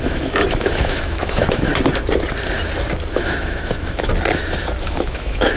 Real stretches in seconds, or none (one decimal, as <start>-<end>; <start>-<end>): 1.7-3.1; 4.1-4.8